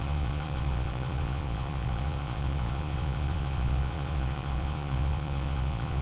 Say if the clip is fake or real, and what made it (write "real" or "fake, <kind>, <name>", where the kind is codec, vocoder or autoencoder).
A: fake, vocoder, Vocos